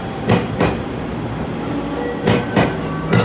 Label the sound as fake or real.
real